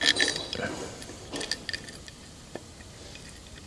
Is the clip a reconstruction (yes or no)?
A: no